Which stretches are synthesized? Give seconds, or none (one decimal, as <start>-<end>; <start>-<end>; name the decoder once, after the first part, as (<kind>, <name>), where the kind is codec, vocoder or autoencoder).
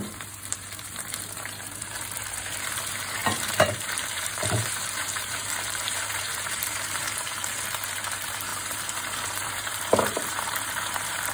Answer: 0.0-11.3 (vocoder, BigVGAN v2)